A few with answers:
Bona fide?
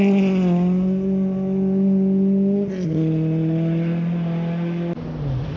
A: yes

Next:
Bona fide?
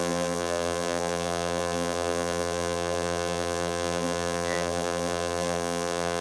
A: no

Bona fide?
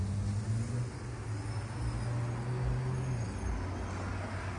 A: yes